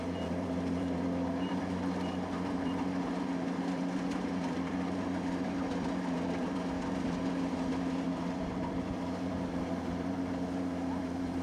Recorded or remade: remade